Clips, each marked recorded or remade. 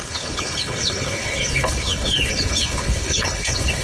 remade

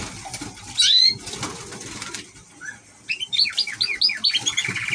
recorded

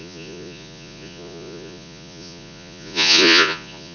remade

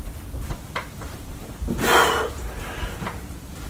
recorded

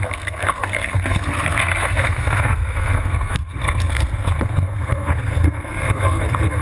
remade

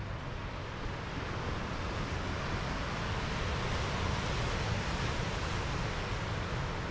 recorded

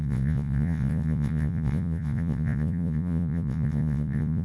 remade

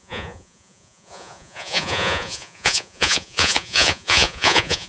remade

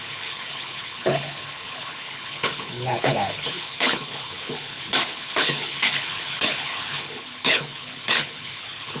remade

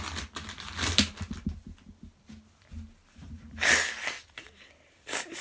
recorded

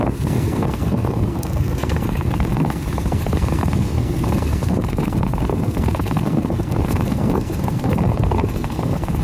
remade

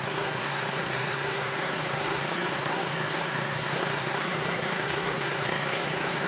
remade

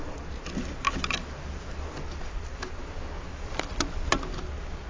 recorded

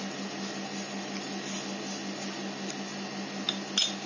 recorded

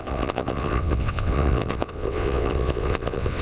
remade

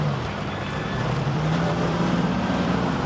remade